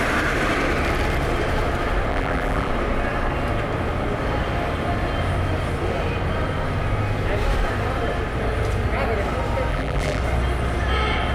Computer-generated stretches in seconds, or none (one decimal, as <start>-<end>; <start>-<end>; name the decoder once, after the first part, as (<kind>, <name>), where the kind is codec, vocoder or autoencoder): 2.1-2.7 (vocoder, BigVGAN v2); 9.7-10.2